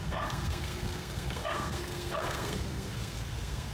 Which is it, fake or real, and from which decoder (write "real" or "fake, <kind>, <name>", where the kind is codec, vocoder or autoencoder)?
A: fake, codec, SNAC